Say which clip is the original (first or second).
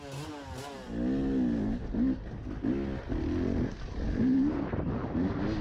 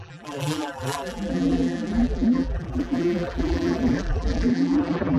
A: first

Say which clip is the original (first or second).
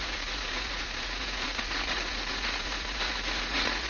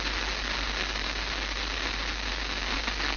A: second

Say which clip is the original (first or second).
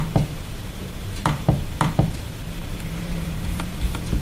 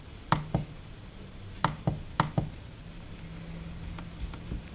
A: second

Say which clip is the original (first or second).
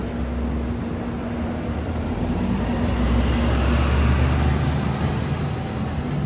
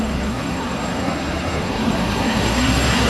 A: first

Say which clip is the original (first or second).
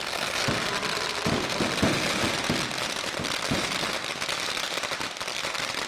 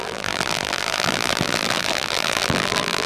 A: first